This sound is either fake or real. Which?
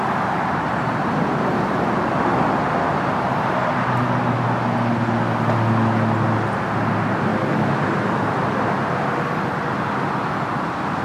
real